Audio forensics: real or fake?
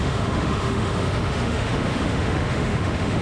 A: fake